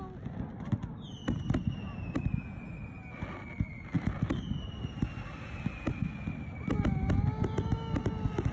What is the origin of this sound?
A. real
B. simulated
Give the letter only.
A